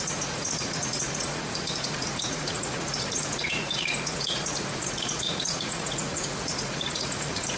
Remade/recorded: remade